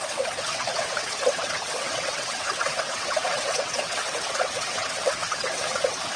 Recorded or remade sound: remade